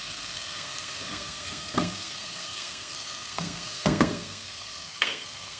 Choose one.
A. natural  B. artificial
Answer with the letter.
B